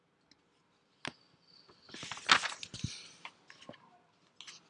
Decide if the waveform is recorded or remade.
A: recorded